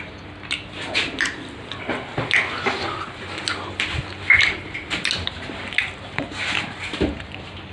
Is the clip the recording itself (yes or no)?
yes